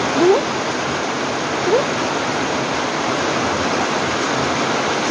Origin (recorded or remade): recorded